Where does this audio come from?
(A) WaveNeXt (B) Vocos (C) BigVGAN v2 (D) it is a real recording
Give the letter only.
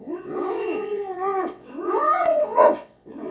A